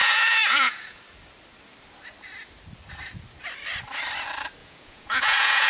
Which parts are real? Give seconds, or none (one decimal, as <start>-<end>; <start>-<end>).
1.0-4.6